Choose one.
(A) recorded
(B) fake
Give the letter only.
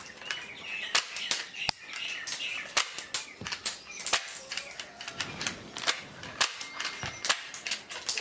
A